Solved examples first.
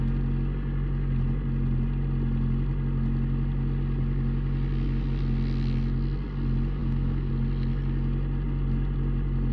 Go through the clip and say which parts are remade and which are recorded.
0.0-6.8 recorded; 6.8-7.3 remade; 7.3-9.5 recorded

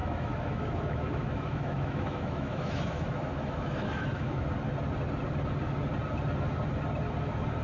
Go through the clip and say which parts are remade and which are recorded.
0.0-4.4 remade; 4.4-7.6 recorded

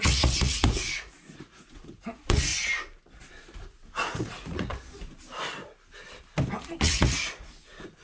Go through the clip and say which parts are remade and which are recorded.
0.0-2.5 remade; 2.5-3.3 recorded; 3.3-4.7 remade; 4.7-6.8 recorded; 6.8-8.0 remade

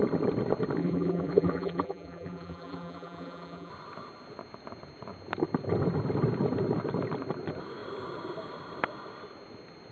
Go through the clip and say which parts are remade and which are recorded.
0.0-0.8 recorded; 0.8-3.7 remade; 3.7-9.9 recorded

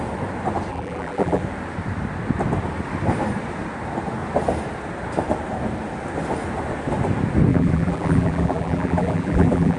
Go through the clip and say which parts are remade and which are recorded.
0.0-0.7 recorded; 0.7-1.4 remade; 1.4-7.5 recorded; 7.5-9.8 remade

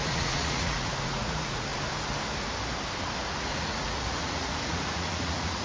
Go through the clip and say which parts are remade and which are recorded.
0.0-1.7 remade; 1.7-3.4 recorded; 3.4-5.6 remade

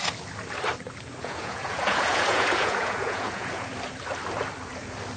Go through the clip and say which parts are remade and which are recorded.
0.0-1.2 recorded; 1.2-3.7 remade; 3.7-5.2 recorded